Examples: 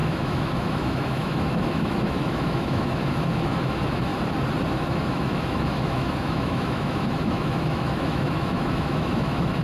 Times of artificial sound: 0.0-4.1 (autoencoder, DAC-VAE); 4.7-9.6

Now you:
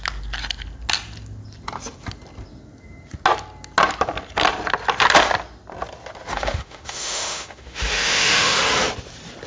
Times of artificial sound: 6.3-8.6 (autoencoder, DAC-VAE)

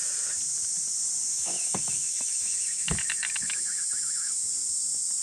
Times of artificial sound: 1.3-4.4 (autoencoder, DAC-VAE)

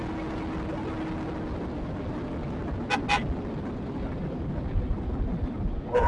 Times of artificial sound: none